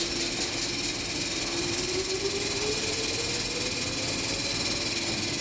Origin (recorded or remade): recorded